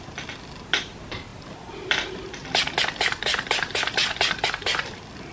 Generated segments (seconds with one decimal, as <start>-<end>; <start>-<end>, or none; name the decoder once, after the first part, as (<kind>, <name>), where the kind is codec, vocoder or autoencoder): none